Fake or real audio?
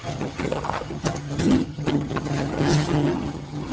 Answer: fake